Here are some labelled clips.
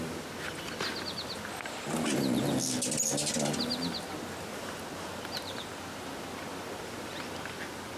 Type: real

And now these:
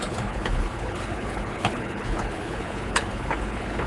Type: fake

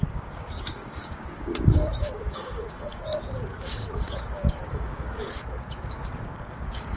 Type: fake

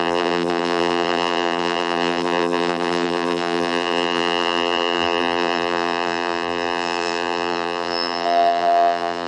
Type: fake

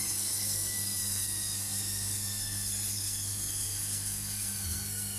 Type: fake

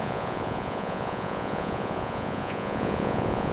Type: fake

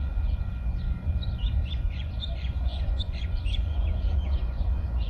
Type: fake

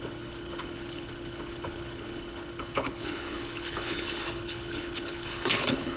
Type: fake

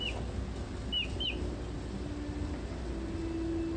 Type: real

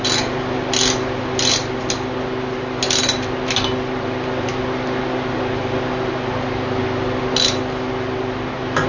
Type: real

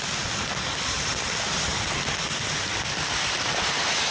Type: real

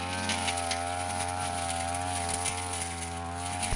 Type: real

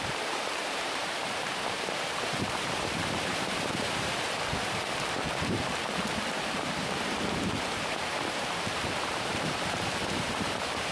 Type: fake